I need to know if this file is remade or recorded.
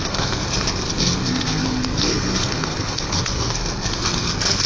remade